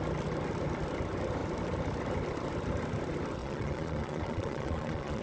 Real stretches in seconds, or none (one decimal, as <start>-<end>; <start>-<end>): 0.0-3.4